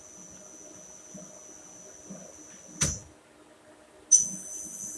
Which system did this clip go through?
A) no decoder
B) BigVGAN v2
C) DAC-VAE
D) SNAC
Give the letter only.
A